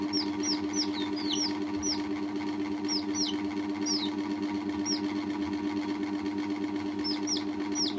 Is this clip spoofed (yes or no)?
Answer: no